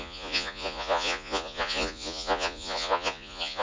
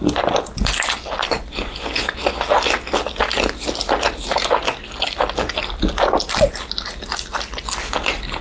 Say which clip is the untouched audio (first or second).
second